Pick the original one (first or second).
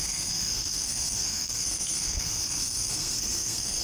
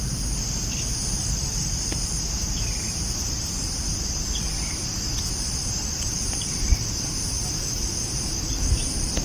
second